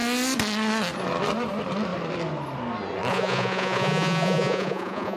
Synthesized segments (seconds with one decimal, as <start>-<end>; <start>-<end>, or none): 3.1-5.2